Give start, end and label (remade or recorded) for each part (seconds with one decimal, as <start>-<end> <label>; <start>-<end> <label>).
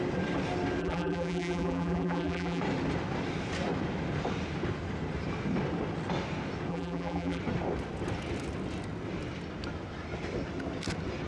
0.0-0.8 recorded; 0.8-2.6 remade; 2.6-6.7 recorded; 6.7-7.4 remade; 7.4-11.3 recorded